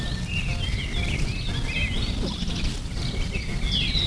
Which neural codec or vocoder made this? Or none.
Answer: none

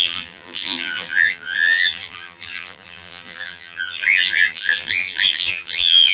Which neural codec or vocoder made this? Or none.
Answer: vocoder, BigVGAN v2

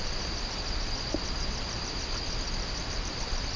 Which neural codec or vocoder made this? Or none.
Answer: none